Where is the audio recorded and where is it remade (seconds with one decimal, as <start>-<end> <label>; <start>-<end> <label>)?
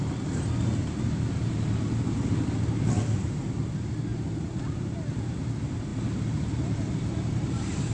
0.0-4.1 recorded; 4.1-5.0 remade; 5.0-7.9 recorded